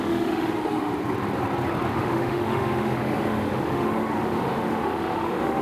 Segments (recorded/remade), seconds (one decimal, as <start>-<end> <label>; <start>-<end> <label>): 0.0-0.9 remade; 0.9-1.9 recorded; 1.9-5.6 remade